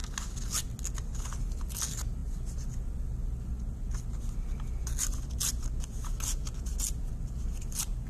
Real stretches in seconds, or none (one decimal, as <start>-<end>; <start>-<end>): 0.0-8.1

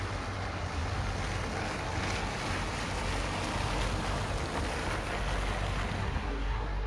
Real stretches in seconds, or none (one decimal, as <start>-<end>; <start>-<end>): 0.0-6.0

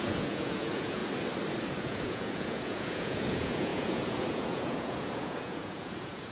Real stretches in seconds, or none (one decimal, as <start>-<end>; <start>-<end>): 1.0-1.7

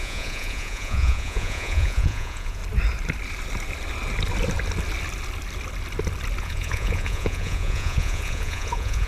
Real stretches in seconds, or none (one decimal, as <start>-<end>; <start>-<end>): 2.6-6.4

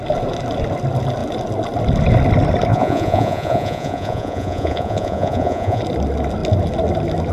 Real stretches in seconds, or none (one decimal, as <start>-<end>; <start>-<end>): 0.0-2.7; 5.8-7.3